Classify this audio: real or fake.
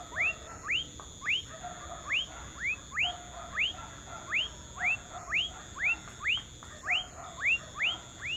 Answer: real